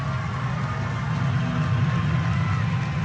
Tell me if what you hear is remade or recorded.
recorded